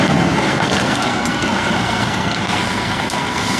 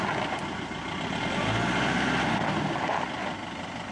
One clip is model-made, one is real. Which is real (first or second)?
second